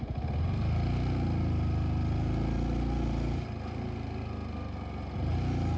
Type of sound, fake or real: real